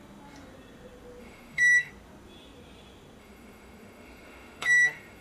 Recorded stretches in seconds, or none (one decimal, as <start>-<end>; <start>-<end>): 0.0-1.2; 1.9-3.2